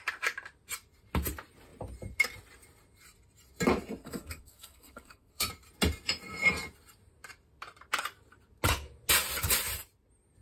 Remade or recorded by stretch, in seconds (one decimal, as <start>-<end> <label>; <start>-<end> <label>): 0.0-4.0 recorded; 4.0-5.5 remade; 5.5-10.4 recorded